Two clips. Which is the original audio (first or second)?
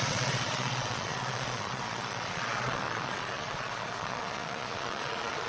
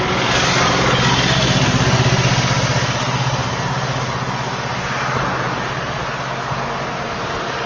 second